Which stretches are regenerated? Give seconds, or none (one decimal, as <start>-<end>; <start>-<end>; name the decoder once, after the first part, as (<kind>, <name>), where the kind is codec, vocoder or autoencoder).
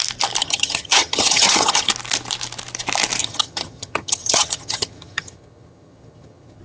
0.4-1.9 (vocoder, HiFi-GAN); 3.2-6.6